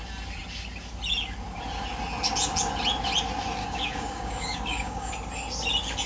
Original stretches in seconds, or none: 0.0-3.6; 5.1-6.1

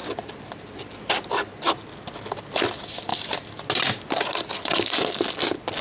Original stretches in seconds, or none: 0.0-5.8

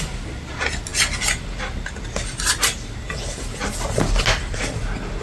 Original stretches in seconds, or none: 0.0-5.2

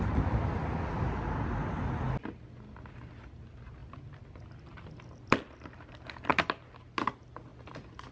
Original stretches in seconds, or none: 0.0-8.1